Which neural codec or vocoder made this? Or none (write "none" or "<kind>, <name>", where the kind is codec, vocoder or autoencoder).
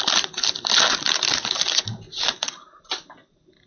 none